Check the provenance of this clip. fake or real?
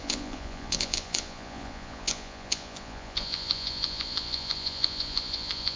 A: fake